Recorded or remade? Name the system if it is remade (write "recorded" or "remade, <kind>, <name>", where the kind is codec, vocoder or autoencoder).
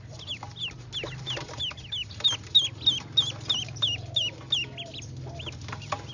recorded